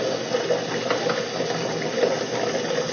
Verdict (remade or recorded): recorded